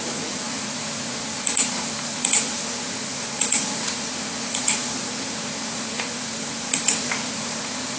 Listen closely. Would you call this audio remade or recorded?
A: remade